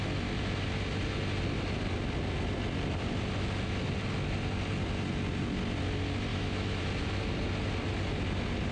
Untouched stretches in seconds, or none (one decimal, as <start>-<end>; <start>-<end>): 0.0-6.3; 6.8-8.7